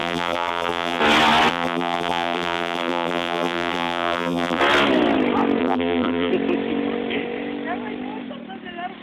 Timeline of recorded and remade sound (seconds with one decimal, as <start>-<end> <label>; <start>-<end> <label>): 0.0-1.0 remade; 1.0-1.5 recorded; 1.5-4.6 remade; 4.6-5.6 recorded; 5.6-6.3 remade; 6.3-9.0 recorded